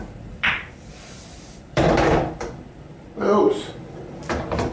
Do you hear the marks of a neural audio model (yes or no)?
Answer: yes